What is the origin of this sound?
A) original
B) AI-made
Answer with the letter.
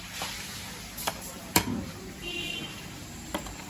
B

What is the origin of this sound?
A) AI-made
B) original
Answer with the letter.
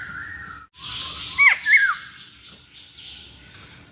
B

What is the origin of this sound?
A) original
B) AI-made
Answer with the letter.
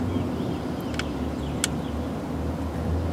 A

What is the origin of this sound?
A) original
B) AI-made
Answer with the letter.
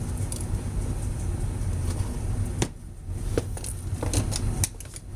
A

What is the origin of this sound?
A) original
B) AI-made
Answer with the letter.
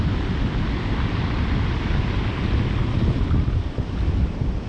A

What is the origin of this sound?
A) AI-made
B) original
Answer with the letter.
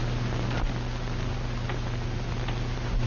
B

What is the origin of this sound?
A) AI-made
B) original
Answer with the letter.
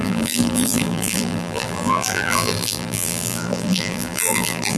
A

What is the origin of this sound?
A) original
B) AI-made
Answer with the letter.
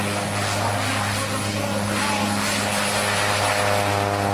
A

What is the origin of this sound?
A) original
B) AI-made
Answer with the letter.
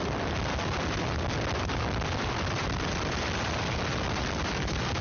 B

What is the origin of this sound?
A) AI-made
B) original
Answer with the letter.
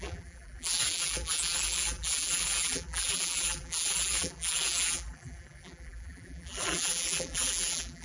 A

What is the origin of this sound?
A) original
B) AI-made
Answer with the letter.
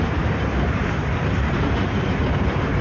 B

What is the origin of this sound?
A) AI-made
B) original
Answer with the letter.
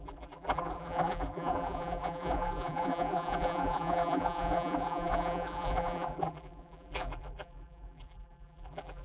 A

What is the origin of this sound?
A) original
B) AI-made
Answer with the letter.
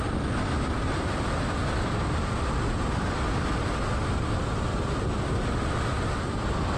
B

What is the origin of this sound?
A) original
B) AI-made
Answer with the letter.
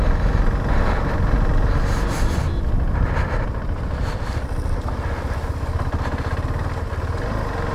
A